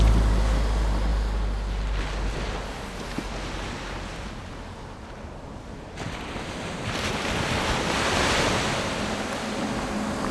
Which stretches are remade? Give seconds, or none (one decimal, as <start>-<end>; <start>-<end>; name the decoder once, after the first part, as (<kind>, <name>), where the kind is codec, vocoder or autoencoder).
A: none